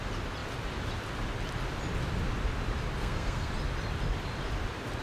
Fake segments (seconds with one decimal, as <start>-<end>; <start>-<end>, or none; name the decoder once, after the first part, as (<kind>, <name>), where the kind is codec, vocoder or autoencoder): 3.0-3.5 (codec, SNAC)